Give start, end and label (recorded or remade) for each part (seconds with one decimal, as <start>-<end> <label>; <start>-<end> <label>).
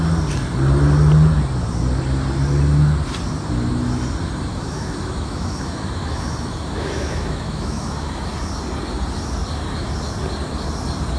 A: 0.0-4.5 recorded; 4.5-8.3 remade; 8.3-11.2 recorded